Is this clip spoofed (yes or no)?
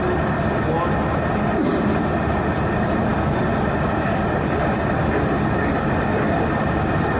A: no